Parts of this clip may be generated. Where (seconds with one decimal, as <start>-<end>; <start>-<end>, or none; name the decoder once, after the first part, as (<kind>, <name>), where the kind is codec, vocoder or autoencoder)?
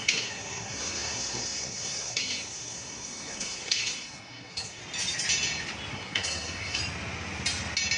0.0-4.8 (codec, SNAC); 5.9-6.8